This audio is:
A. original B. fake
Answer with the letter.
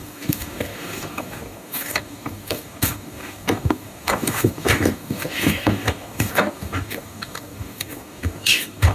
B